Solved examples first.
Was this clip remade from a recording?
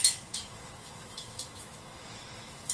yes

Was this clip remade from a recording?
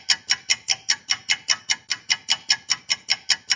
no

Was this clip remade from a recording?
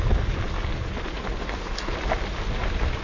no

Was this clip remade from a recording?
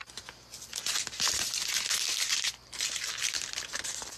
no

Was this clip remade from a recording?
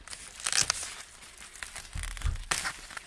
no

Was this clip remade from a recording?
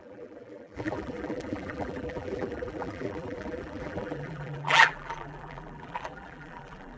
yes